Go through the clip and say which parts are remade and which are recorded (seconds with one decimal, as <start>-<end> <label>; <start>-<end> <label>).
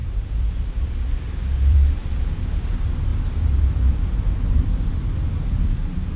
0.0-2.3 remade; 2.3-3.1 recorded; 3.1-3.9 remade; 3.9-6.2 recorded